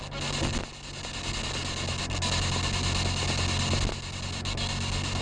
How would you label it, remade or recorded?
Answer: recorded